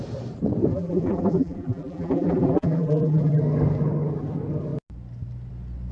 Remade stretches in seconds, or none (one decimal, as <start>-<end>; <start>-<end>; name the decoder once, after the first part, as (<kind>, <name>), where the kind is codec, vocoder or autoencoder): 0.7-3.4 (vocoder, BigVGAN v2)